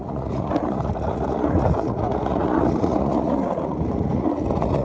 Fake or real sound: fake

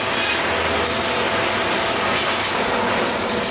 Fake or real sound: real